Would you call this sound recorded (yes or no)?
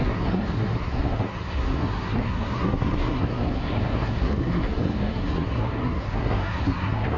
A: no